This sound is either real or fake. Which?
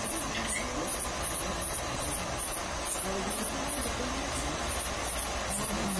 real